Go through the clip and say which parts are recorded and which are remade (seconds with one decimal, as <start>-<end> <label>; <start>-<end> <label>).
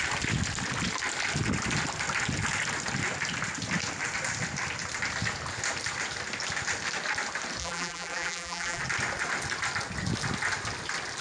0.0-7.6 recorded; 7.6-8.8 remade; 8.8-11.2 recorded